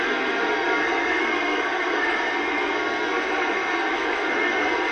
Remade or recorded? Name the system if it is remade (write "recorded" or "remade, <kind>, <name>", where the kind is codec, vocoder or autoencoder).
remade, codec, SNAC